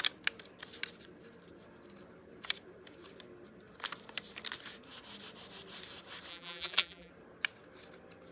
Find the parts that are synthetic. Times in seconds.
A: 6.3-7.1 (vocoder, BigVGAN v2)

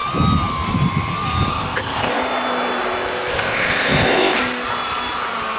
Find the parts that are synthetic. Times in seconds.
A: 1.5-2.2 (codec, ZipCodec); 3.3-4.4

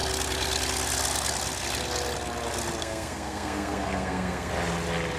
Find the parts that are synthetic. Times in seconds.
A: 2.8-4.5 (codec, SNAC)

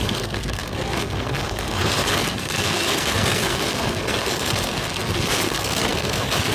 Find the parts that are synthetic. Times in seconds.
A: 0.0-6.5 (codec, SNAC)

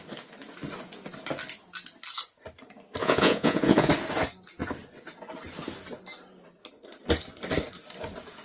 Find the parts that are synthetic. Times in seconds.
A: 3.0-3.9 (vocoder, Vocos)

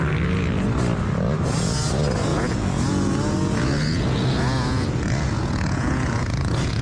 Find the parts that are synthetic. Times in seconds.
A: 2.3-6.8 (vocoder, Vocos)